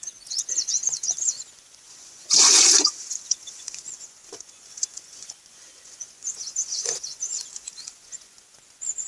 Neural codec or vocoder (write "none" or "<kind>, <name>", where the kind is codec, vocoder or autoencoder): vocoder, Vocos